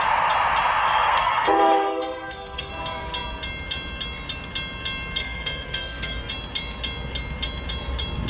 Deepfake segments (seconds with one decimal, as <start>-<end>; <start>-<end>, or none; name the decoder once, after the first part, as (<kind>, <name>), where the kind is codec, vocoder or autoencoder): 0.8-2.7 (codec, SNAC); 5.2-6.3